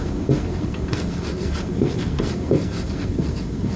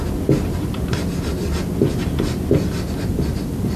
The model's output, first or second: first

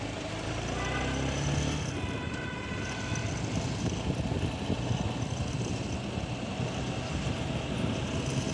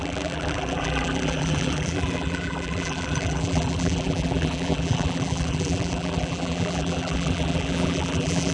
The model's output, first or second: second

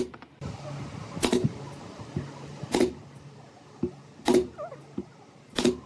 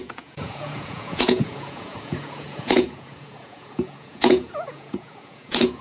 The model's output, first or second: second